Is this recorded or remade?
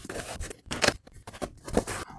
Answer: remade